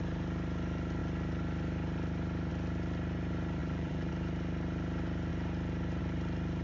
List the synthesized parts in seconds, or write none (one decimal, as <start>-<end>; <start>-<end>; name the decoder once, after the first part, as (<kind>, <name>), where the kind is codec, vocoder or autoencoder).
3.6-4.1 (vocoder, BigVGAN v2)